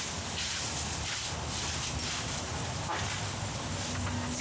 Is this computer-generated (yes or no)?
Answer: no